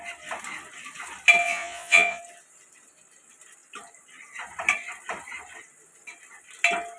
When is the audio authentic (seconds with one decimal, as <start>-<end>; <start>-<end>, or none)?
0.0-1.4; 2.2-7.0